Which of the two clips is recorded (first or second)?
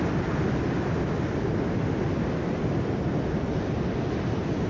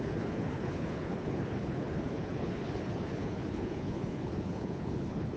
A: first